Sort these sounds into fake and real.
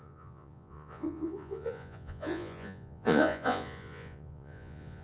fake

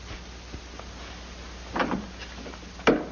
real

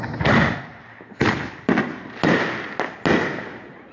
real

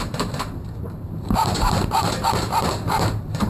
fake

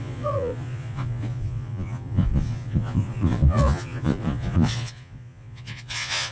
fake